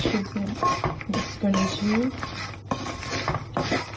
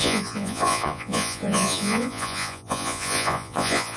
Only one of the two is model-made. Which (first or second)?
second